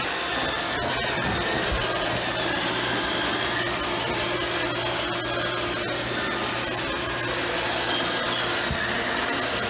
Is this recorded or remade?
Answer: recorded